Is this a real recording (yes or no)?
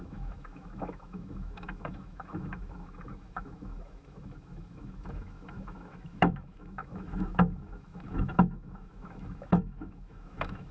no